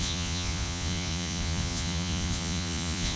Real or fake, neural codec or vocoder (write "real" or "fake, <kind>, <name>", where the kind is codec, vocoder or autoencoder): fake, vocoder, Vocos